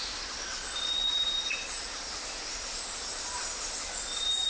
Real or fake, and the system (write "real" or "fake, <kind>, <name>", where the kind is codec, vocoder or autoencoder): real